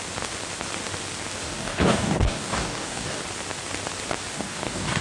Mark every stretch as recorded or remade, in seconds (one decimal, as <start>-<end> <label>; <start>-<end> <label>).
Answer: 0.0-1.4 recorded; 1.4-3.2 remade; 3.2-4.3 recorded; 4.3-5.0 remade